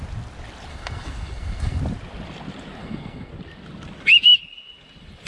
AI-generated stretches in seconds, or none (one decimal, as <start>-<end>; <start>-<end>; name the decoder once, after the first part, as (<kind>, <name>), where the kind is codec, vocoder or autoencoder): 0.7-1.8 (codec, SNAC); 2.8-3.3